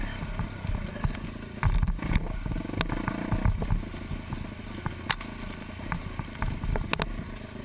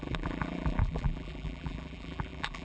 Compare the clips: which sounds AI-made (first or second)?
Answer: second